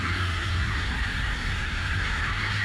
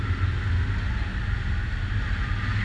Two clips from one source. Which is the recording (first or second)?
second